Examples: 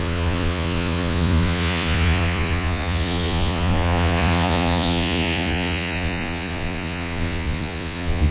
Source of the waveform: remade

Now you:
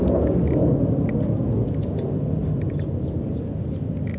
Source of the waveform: recorded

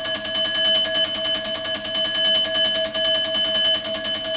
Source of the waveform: recorded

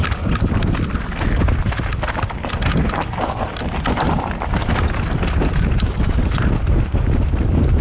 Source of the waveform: recorded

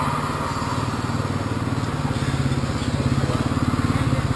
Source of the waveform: recorded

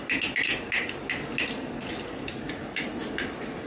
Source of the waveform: recorded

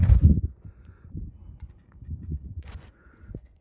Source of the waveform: remade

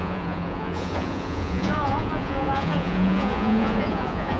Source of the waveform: remade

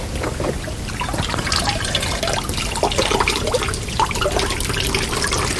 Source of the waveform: recorded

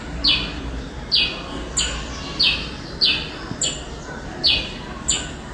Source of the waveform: recorded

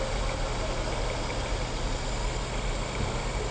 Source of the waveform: recorded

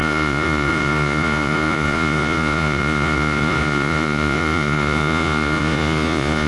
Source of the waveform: remade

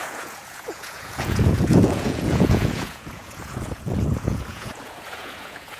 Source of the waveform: remade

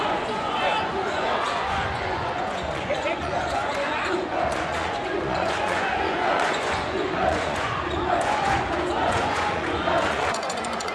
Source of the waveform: remade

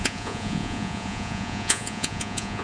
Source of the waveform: remade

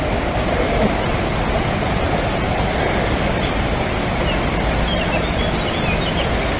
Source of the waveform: recorded